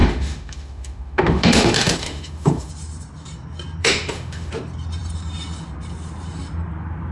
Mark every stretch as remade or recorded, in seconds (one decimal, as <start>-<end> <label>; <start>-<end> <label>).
0.0-2.7 remade; 2.7-3.8 recorded; 3.8-4.5 remade; 4.5-7.1 recorded